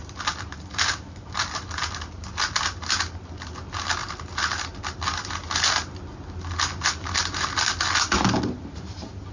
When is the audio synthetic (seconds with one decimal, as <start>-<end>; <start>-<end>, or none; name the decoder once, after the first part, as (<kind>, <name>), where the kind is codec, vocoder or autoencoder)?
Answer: none